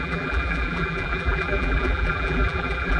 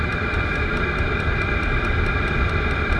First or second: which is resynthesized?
first